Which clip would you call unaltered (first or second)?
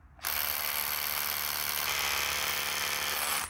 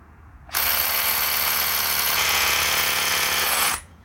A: first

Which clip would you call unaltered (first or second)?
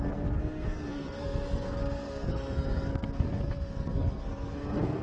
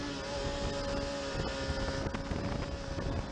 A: second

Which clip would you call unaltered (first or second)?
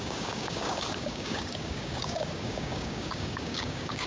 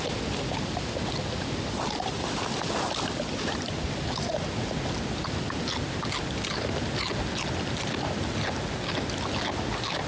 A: second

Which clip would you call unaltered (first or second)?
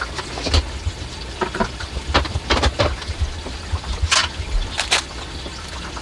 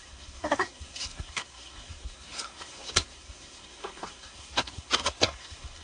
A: first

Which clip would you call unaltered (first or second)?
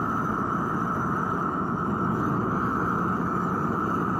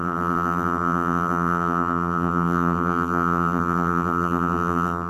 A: first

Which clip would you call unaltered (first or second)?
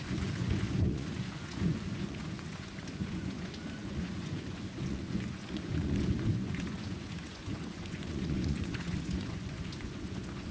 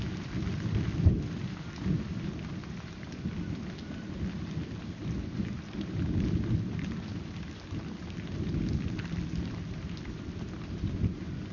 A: second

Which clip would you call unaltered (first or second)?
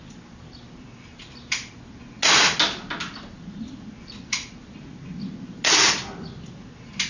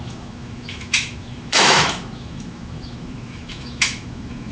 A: first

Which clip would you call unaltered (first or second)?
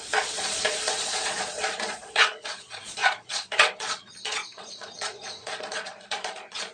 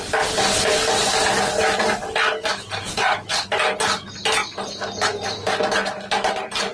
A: second